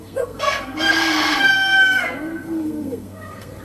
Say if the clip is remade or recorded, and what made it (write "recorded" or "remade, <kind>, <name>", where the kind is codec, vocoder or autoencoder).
remade, codec, SNAC